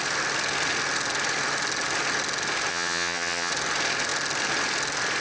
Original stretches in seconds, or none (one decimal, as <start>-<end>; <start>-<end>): 0.0-2.7; 3.5-5.2